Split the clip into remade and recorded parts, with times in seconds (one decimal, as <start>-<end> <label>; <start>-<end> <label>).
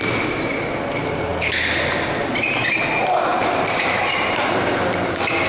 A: 0.0-3.3 recorded; 3.3-4.5 remade; 4.5-5.5 recorded